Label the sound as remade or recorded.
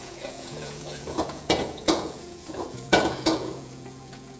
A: remade